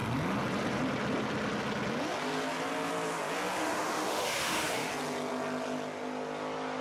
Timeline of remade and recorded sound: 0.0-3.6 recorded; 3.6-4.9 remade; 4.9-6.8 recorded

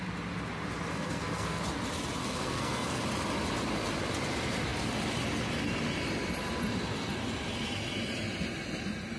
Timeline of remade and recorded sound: 0.0-0.9 recorded; 0.9-1.6 remade; 1.6-2.2 recorded; 2.2-3.0 remade; 3.0-9.2 recorded

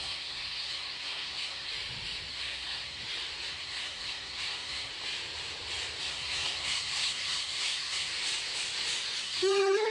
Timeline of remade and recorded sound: 0.0-1.7 remade; 1.7-2.3 recorded; 2.3-3.0 remade; 3.0-3.5 recorded; 3.5-4.9 remade; 4.9-6.0 recorded; 6.0-8.1 remade; 8.1-9.2 recorded; 9.2-9.9 remade

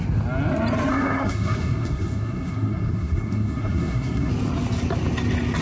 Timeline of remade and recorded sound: 0.0-0.9 recorded; 0.9-4.3 remade; 4.3-5.6 recorded

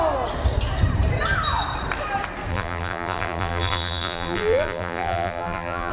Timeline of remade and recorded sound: 0.0-2.5 recorded; 2.5-5.9 remade